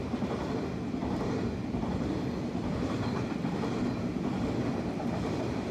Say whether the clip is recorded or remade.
remade